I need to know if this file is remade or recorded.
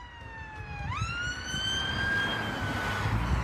recorded